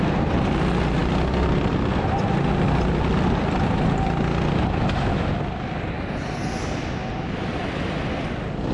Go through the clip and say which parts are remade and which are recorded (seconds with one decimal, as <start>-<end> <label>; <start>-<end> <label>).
0.0-8.7 recorded